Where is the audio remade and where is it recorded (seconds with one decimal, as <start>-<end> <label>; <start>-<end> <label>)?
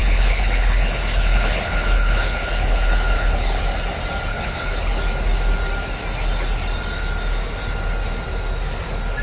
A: 0.0-3.6 remade; 3.6-4.3 recorded; 4.3-5.0 remade; 5.0-9.2 recorded